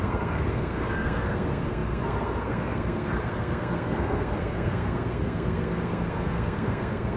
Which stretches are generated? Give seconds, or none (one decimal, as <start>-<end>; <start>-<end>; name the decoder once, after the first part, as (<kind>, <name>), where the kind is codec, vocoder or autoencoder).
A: 0.0-7.2 (codec, SNAC)